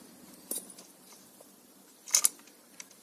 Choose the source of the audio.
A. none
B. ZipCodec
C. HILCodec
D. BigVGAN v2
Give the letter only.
A